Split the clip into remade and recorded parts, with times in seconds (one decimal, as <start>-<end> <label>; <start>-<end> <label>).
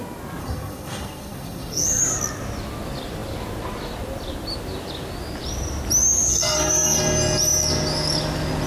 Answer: 0.0-0.4 recorded; 0.4-2.0 remade; 2.0-6.3 recorded; 6.3-7.0 remade; 7.0-8.7 recorded